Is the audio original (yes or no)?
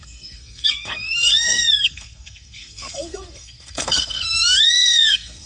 no